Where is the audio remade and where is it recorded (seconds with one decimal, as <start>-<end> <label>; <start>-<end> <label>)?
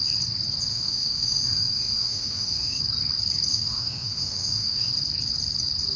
0.0-0.7 recorded; 0.7-2.8 remade; 2.8-3.5 recorded; 3.5-4.9 remade; 4.9-6.0 recorded